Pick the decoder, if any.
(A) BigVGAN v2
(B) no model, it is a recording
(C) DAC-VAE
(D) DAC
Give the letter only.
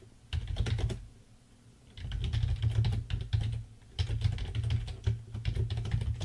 B